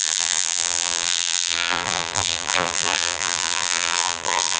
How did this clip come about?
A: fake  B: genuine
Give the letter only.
A